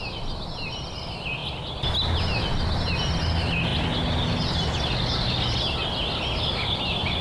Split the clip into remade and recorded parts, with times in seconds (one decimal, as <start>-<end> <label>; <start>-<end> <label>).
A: 0.0-7.2 recorded